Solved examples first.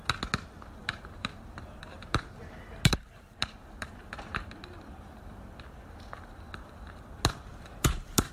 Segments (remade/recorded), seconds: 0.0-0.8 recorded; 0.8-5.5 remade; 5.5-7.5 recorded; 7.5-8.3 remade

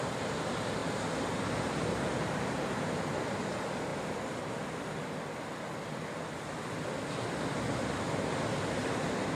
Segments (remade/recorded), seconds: 0.0-3.9 remade; 3.9-8.0 recorded; 8.0-9.3 remade

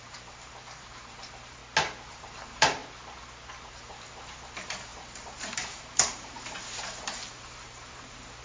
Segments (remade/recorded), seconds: 0.0-1.6 remade; 1.6-2.1 recorded; 2.1-2.8 remade; 2.8-3.7 recorded; 3.7-8.4 remade

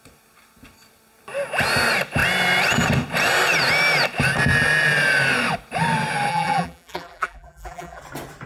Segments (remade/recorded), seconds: 0.0-6.3 recorded; 6.3-8.0 remade; 8.0-8.5 recorded

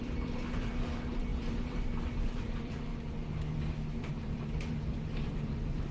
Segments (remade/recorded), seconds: 0.0-2.9 remade; 2.9-4.1 recorded; 4.1-5.9 remade

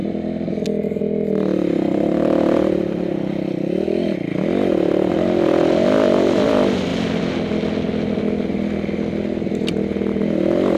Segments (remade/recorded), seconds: 0.0-10.8 recorded

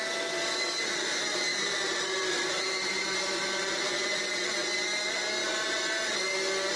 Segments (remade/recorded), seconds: 0.0-1.5 recorded; 1.5-4.4 remade; 4.4-5.5 recorded; 5.5-6.3 remade; 6.3-6.8 recorded

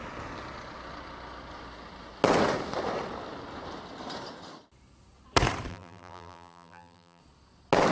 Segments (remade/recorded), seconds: 0.0-5.7 recorded; 5.7-7.2 remade; 7.2-7.9 recorded